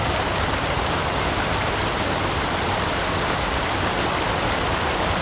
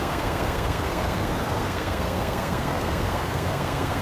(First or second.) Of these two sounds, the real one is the first